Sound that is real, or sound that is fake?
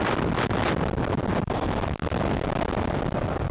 real